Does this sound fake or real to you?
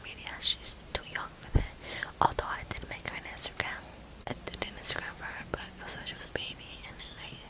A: real